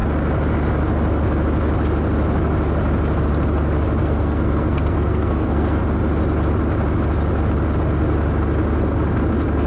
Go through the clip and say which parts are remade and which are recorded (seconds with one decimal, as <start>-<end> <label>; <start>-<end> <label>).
0.0-4.0 recorded; 4.0-5.8 remade; 5.8-9.7 recorded